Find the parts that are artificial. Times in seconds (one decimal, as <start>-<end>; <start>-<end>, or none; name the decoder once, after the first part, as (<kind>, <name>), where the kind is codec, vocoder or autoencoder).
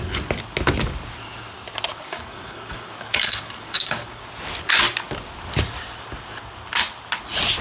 1.9-4.2 (codec, DAC)